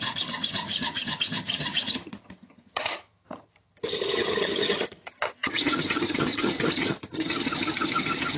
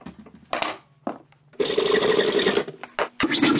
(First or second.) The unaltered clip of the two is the second